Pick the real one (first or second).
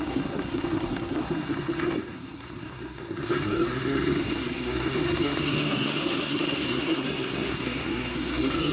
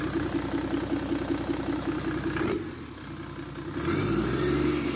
second